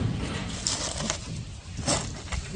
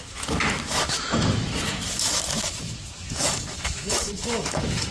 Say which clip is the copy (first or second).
second